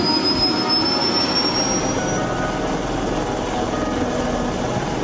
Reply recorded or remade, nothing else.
recorded